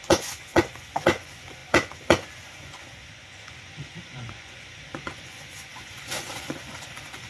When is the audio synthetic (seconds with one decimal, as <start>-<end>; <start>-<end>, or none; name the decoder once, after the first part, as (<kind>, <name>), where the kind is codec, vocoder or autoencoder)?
0.0-7.3 (vocoder, Vocos)